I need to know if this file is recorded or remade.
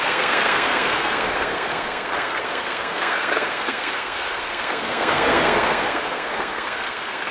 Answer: remade